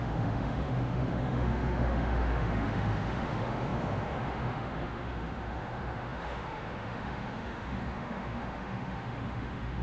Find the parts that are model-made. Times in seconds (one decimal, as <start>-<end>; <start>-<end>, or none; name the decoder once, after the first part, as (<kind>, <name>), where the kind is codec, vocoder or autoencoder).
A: 0.0-9.8 (autoencoder, DAC-VAE)